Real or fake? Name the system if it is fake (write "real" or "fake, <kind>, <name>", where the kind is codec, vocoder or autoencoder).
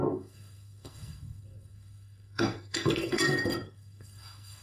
fake, codec, SNAC